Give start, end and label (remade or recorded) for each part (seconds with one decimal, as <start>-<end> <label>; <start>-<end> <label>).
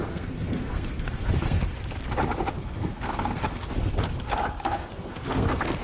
0.0-1.7 remade; 1.7-2.5 recorded; 2.5-3.9 remade; 3.9-4.5 recorded; 4.5-5.8 remade